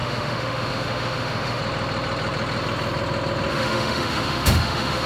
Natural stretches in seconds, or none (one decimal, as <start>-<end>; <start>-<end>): 1.6-3.5